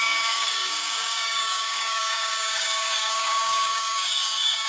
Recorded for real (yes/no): no